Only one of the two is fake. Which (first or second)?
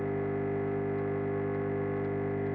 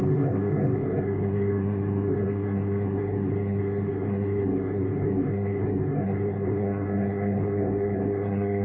second